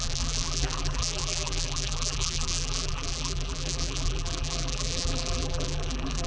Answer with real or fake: fake